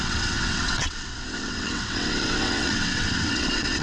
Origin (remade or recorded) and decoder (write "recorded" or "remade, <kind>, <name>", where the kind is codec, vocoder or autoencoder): remade, vocoder, WaveNeXt